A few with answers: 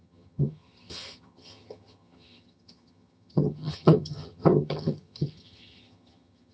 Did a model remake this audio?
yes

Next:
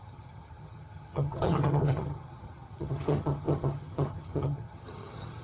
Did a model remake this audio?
yes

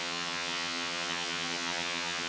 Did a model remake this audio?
yes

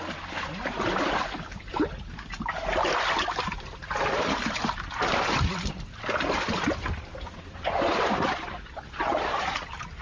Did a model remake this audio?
no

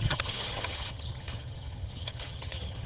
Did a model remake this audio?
yes